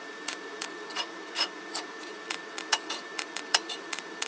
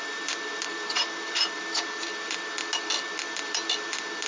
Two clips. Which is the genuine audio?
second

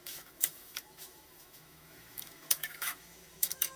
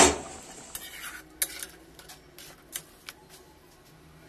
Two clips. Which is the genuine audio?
second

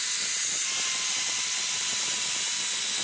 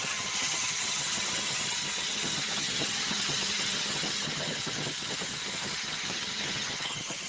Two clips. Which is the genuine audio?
first